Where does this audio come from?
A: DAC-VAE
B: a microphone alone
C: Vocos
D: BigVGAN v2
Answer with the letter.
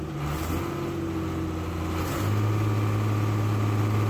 B